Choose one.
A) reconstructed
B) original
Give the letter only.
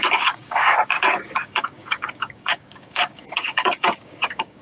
A